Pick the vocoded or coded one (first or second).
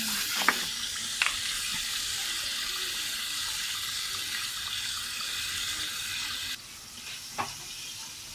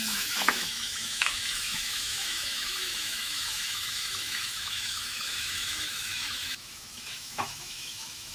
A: second